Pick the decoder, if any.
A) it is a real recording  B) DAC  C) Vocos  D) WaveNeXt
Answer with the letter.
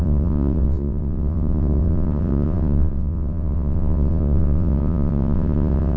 D